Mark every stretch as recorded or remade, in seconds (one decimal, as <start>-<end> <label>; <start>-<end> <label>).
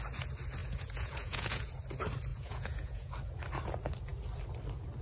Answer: 0.0-0.6 recorded; 0.6-1.7 remade; 1.7-2.3 recorded; 2.3-3.1 remade; 3.1-5.0 recorded